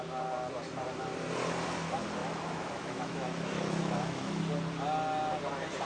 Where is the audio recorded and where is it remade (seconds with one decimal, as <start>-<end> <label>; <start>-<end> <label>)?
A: 0.0-2.2 recorded; 2.2-4.4 remade; 4.4-5.8 recorded